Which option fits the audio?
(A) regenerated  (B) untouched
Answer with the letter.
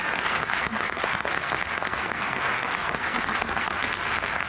A